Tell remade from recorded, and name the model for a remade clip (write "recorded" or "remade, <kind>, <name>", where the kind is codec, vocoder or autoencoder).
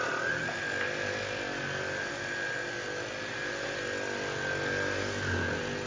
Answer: recorded